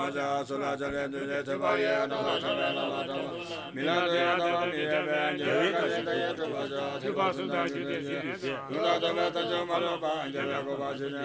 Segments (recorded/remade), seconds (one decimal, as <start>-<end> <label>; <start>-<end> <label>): 0.0-11.2 recorded